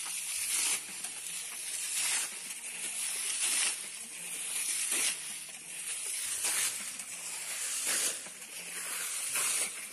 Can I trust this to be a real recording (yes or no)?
yes